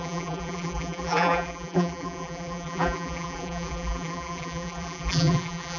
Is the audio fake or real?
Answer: fake